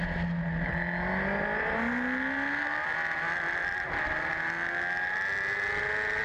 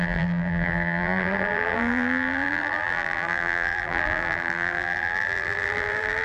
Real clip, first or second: first